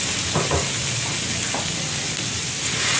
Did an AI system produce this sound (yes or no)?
no